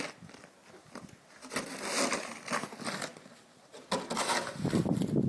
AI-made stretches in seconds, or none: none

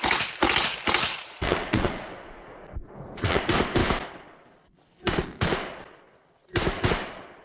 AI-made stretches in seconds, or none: 1.1-3.4 (vocoder, Vocos)

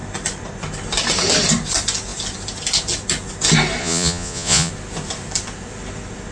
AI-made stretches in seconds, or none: 3.8-4.7 (vocoder, Vocos)

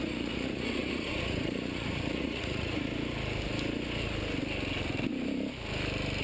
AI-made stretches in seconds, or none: 0.0-2.9 (vocoder, Vocos)

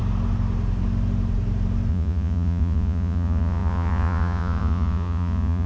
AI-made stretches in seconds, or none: 1.9-5.7 (vocoder, Vocos)

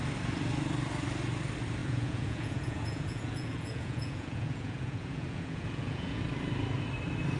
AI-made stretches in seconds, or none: 1.8-6.2 (vocoder, Vocos)

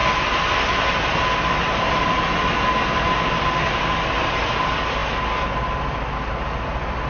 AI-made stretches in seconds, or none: none

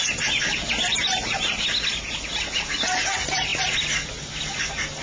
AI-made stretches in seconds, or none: none